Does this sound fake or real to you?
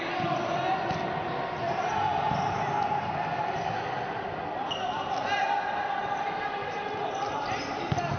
real